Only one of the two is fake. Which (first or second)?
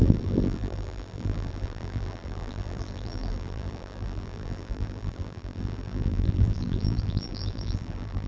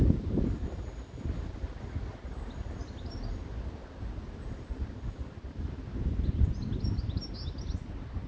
first